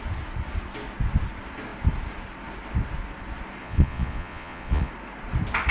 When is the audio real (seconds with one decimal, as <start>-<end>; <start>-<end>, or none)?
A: 0.0-3.6; 4.9-5.7